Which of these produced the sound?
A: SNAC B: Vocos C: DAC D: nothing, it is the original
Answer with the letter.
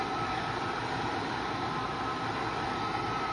D